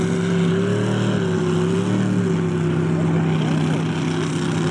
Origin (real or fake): real